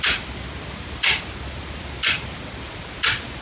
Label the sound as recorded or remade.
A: recorded